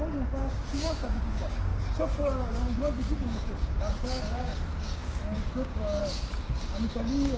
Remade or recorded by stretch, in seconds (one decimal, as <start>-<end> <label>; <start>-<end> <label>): 0.0-7.4 remade